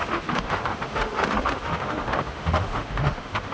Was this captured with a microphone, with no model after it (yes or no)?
no